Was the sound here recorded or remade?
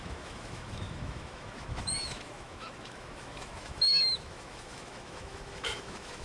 remade